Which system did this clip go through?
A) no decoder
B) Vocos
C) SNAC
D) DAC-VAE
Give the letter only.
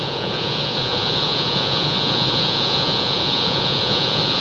B